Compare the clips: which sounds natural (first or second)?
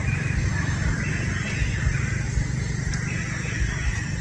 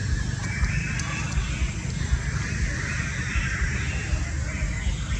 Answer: second